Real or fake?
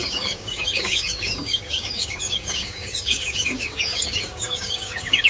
fake